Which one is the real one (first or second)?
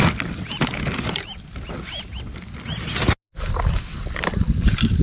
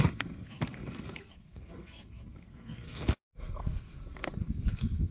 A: first